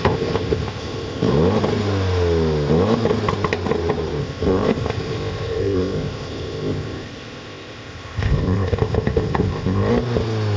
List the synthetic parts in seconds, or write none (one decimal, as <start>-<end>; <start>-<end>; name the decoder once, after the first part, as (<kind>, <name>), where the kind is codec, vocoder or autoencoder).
0.0-1.3 (codec, ZipCodec); 4.2-9.9